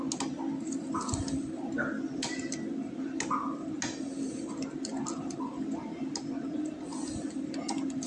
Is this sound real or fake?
real